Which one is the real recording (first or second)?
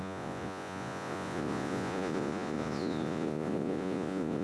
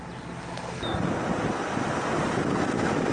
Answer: second